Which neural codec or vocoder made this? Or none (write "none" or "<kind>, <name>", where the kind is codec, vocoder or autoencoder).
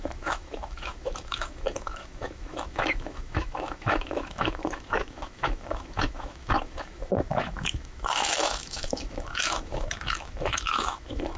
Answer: autoencoder, DAC-VAE